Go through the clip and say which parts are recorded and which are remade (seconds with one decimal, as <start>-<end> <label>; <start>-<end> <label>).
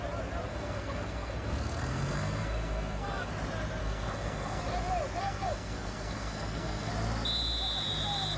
0.0-0.5 recorded; 0.5-3.3 remade; 3.3-3.8 recorded; 3.8-4.6 remade; 4.6-5.2 recorded; 5.2-6.9 remade; 6.9-8.4 recorded